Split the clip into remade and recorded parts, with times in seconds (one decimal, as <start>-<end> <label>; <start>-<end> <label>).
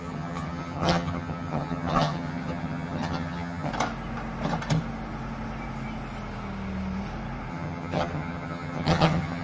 0.0-3.7 remade; 3.7-7.5 recorded; 7.5-9.4 remade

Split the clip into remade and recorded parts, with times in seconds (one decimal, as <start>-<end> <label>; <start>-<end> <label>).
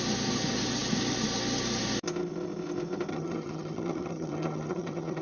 0.0-3.1 recorded; 3.1-5.2 remade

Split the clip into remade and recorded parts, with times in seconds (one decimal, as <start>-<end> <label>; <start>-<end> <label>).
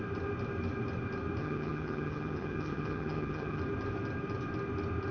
0.0-1.4 recorded; 1.4-3.6 remade; 3.6-5.1 recorded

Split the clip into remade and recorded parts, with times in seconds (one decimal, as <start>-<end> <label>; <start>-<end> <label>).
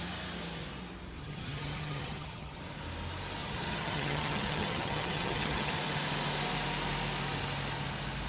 0.0-1.2 recorded; 1.2-2.6 remade; 2.6-3.4 recorded; 3.4-5.7 remade; 5.7-8.3 recorded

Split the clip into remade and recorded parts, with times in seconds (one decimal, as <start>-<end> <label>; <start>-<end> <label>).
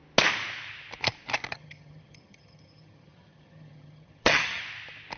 0.0-1.5 recorded; 1.5-4.6 remade; 4.6-5.2 recorded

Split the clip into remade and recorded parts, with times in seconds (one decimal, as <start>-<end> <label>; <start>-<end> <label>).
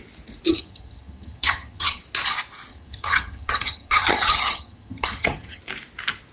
0.0-0.5 recorded; 0.5-2.0 remade; 2.0-2.7 recorded; 2.7-5.6 remade; 5.6-6.3 recorded